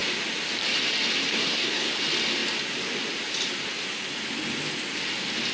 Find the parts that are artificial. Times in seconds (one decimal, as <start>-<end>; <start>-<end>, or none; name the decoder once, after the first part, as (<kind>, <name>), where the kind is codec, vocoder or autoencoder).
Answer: 1.3-1.9 (codec, SNAC)